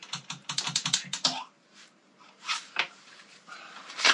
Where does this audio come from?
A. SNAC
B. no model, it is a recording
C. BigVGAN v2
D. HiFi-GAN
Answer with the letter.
C